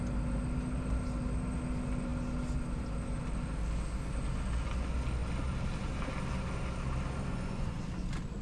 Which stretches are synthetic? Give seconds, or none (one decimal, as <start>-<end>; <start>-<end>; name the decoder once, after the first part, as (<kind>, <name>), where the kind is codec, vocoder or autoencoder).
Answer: 7.3-7.8 (vocoder, Vocos)